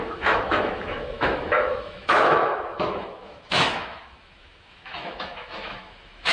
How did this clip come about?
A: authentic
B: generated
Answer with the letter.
B